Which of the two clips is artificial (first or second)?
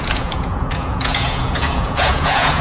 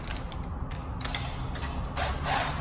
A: first